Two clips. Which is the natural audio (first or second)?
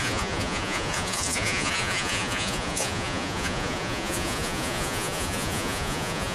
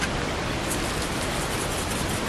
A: second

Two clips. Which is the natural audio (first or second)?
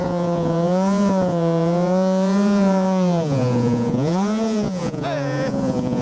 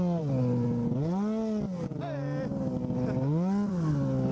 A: second